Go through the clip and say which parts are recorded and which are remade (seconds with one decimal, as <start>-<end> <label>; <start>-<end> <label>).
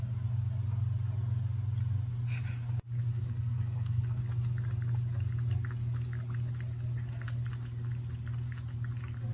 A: 0.0-3.1 recorded; 3.1-4.2 remade; 4.2-9.3 recorded